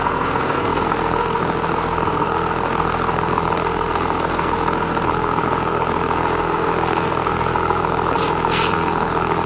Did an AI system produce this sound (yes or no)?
yes